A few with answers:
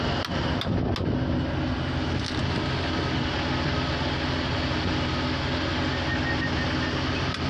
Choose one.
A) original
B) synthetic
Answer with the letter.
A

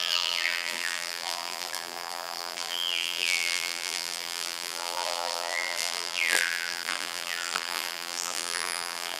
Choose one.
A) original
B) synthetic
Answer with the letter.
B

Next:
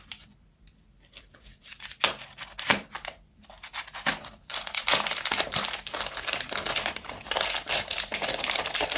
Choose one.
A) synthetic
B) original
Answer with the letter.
A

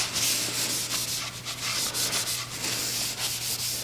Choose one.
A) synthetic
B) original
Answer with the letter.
B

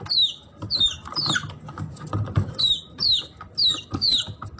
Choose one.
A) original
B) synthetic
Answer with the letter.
A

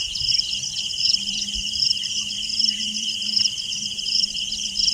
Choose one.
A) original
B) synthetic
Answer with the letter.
B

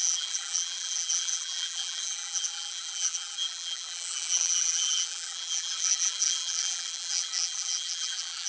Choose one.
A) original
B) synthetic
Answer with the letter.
B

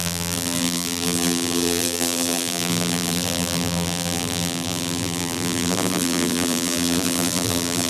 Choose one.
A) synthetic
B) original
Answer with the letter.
A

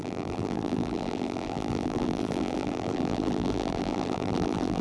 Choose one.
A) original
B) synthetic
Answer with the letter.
B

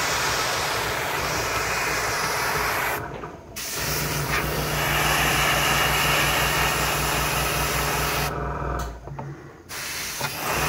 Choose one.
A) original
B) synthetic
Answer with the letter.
A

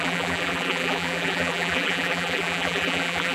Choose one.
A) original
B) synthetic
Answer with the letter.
B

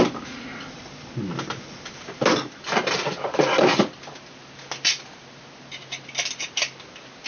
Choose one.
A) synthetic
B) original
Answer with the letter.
B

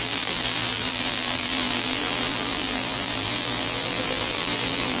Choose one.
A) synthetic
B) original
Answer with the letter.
A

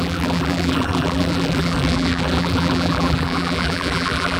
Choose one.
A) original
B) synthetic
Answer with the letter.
B